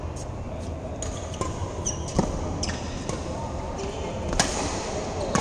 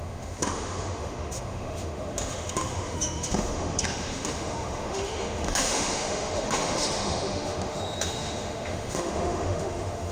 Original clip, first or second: first